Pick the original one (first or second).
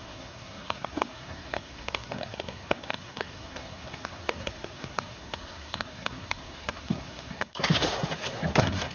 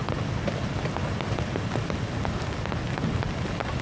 second